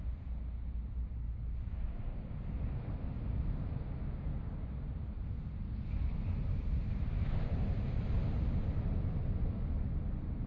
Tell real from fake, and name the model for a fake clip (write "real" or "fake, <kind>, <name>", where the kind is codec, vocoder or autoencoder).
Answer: real